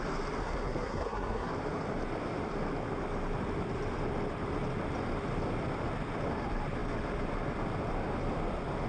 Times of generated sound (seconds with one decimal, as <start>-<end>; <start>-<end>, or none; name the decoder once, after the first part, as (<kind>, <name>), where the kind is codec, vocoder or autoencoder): 0.4-1.5 (codec, SNAC)